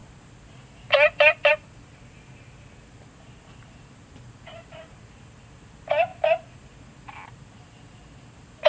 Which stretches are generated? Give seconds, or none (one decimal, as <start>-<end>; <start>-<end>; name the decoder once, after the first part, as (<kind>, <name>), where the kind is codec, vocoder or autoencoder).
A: none